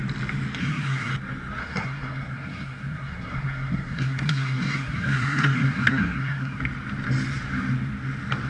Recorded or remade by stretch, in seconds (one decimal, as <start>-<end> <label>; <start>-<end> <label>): 0.0-0.6 recorded; 0.6-1.1 remade; 1.1-1.6 recorded; 1.6-6.6 remade; 6.6-8.5 recorded